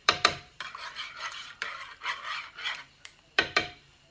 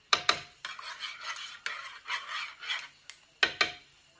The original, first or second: second